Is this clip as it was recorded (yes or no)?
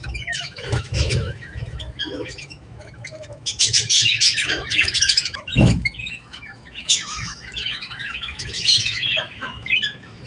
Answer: no